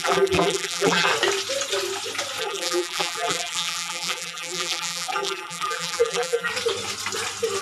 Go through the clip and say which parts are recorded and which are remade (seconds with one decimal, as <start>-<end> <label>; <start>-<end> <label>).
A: 0.0-1.1 remade; 1.1-2.4 recorded; 2.4-6.5 remade; 6.5-7.6 recorded